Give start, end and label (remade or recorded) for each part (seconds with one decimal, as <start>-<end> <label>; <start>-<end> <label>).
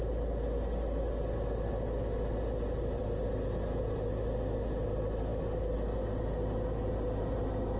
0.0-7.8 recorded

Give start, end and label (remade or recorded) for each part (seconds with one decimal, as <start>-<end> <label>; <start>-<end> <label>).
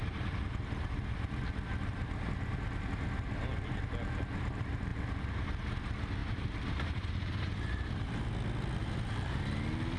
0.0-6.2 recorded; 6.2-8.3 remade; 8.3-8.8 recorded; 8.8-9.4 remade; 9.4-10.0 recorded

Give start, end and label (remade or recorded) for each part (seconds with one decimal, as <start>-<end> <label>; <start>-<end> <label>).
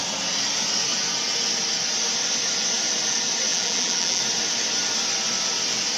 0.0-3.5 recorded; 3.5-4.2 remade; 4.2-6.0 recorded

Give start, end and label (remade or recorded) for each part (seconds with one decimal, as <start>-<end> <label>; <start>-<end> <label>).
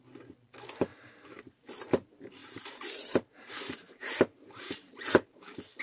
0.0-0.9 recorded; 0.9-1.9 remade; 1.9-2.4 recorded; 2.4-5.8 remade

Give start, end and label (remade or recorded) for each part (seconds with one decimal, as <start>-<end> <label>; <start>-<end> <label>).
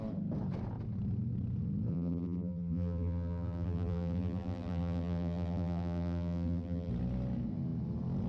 0.0-1.9 recorded; 1.9-6.9 remade; 6.9-8.3 recorded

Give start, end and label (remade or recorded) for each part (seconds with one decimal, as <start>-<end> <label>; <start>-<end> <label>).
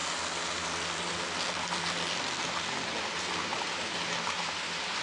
0.0-3.0 recorded; 3.0-5.0 remade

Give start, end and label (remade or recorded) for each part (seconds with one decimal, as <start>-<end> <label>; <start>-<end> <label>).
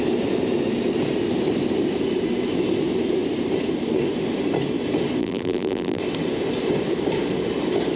0.0-5.2 recorded; 5.2-6.0 remade; 6.0-8.0 recorded